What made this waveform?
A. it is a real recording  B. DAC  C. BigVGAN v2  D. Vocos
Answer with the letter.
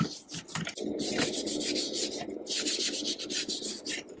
A